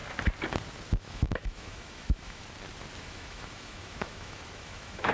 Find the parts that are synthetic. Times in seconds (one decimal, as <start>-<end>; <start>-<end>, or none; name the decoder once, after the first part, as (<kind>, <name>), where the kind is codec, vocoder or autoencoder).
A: 1.0-2.4 (autoencoder, DAC-VAE); 3.0-5.1